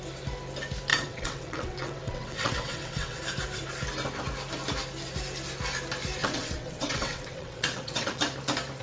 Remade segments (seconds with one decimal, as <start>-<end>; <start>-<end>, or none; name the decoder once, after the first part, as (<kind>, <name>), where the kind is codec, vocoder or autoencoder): 0.9-3.2 (vocoder, WaveNeXt); 6.2-8.2